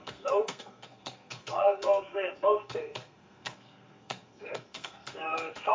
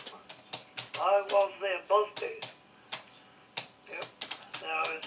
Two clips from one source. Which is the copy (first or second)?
first